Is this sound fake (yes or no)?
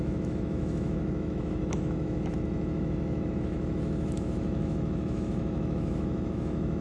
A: yes